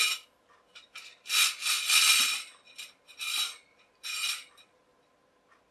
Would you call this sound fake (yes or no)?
no